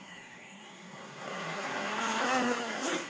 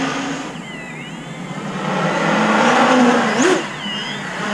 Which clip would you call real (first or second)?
second